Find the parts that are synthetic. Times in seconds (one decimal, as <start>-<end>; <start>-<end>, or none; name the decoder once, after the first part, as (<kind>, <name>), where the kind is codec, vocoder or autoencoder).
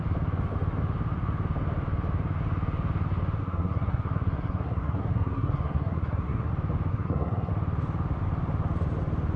3.4-6.5 (codec, SNAC); 6.9-7.5